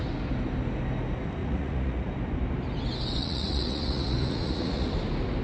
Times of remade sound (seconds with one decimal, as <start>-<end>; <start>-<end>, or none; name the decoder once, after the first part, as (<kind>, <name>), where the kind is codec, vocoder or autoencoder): 1.4-2.1 (vocoder, Vocos); 3.2-4.9